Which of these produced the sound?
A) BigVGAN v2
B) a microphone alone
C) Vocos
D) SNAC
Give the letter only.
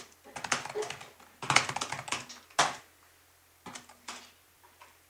B